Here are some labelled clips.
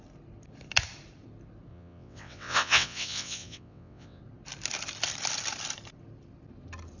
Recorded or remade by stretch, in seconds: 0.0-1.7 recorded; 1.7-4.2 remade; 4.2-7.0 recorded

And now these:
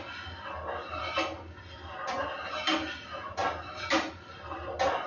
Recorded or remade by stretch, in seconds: 0.0-5.1 recorded

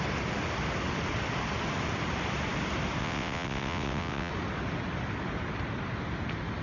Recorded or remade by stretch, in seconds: 0.0-3.0 recorded; 3.0-4.3 remade; 4.3-6.6 recorded

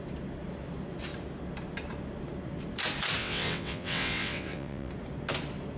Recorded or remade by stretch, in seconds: 0.0-3.2 recorded; 3.2-4.9 remade; 4.9-5.8 recorded

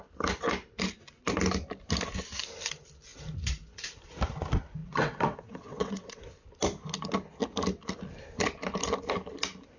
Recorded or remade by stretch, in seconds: 0.0-4.8 recorded; 4.8-6.2 remade; 6.2-9.8 recorded

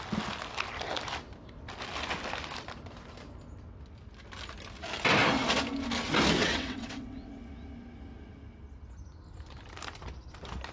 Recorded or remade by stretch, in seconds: 0.0-6.4 recorded; 6.4-7.3 remade; 7.3-10.7 recorded

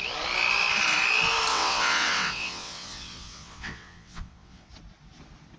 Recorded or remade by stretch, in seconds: 0.0-1.5 recorded; 1.5-4.7 remade; 4.7-5.6 recorded